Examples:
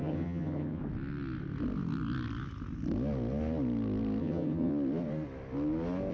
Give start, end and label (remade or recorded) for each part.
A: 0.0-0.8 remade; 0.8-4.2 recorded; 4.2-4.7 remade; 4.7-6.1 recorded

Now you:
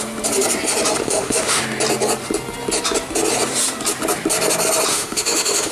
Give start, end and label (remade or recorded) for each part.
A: 0.0-1.0 recorded; 1.0-1.6 remade; 1.6-4.9 recorded; 4.9-5.7 remade

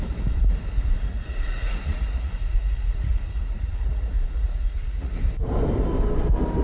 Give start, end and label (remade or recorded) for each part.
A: 0.0-1.1 recorded; 1.1-5.1 remade; 5.1-6.6 recorded

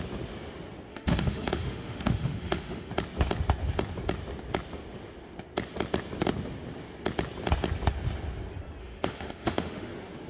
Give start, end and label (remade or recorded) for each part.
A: 0.0-0.9 recorded; 0.9-2.9 remade; 2.9-8.8 recorded; 8.8-9.9 remade; 9.9-10.3 recorded

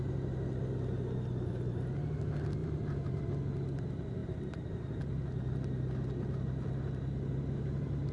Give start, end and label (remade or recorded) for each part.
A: 0.0-2.6 recorded; 2.6-3.2 remade; 3.2-4.2 recorded; 4.2-5.0 remade; 5.0-8.1 recorded

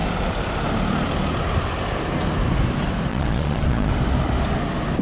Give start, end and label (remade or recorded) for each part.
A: 0.0-3.1 recorded; 3.1-3.9 remade; 3.9-5.0 recorded